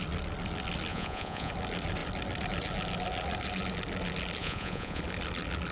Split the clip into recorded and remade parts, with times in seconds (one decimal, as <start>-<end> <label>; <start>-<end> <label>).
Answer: 0.0-0.9 recorded; 0.9-1.5 remade; 1.5-4.4 recorded; 4.4-5.0 remade; 5.0-5.7 recorded